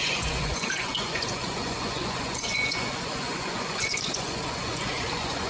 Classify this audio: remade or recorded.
remade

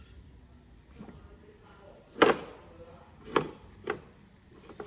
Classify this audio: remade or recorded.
recorded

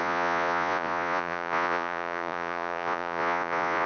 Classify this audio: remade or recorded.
remade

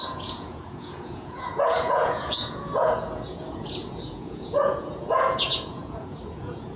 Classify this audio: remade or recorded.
remade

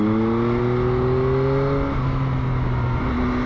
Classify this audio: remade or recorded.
recorded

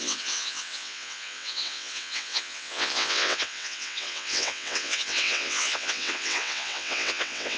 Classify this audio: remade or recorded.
remade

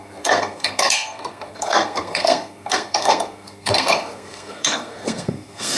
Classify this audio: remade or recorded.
remade